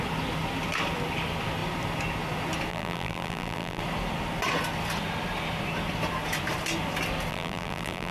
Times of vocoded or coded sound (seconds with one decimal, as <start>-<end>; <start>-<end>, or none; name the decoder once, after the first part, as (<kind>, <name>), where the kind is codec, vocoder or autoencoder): 2.7-3.8 (vocoder, BigVGAN v2); 7.3-8.1